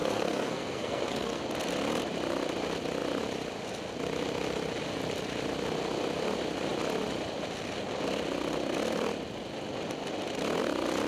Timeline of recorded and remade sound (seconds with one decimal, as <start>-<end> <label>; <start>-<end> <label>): 0.0-1.4 remade; 1.4-11.1 recorded